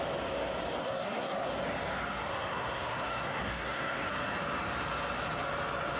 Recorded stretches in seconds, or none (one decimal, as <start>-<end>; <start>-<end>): 0.0-0.8; 1.5-2.3; 4.1-6.0